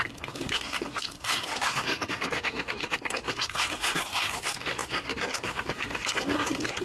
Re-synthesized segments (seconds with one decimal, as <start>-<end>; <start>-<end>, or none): 0.0-6.8